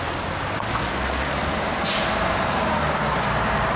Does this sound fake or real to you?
real